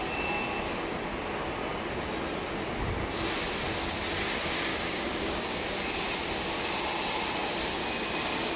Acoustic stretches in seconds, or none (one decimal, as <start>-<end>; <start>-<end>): 0.0-4.7; 5.6-8.6